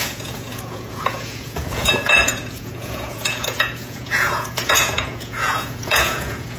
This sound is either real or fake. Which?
fake